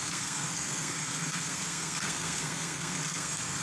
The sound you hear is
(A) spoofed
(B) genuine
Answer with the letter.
A